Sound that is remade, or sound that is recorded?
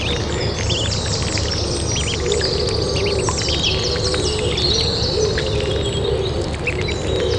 recorded